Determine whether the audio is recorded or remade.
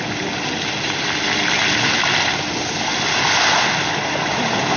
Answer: recorded